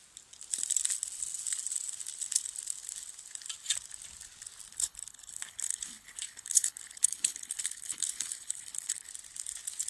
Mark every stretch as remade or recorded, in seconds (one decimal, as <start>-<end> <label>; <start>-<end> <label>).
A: 0.0-4.7 recorded; 4.7-9.1 remade; 9.1-9.9 recorded